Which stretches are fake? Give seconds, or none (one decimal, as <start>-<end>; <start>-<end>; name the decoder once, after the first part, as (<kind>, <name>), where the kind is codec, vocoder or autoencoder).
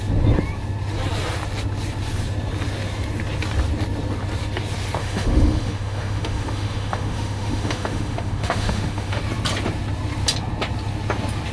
5.0-9.2 (autoencoder, DAC-VAE)